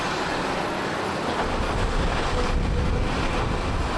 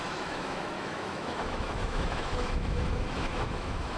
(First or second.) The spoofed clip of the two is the second